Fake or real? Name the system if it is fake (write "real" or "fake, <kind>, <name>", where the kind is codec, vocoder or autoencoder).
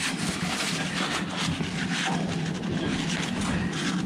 real